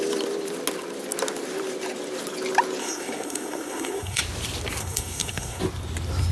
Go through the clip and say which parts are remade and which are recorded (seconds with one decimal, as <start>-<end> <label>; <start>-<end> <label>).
0.0-2.8 recorded; 2.8-4.2 remade; 4.2-4.8 recorded; 4.8-5.6 remade; 5.6-6.3 recorded